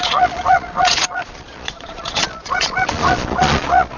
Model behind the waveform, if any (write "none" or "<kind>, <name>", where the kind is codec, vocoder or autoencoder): vocoder, Vocos